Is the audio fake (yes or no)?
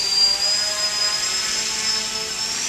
no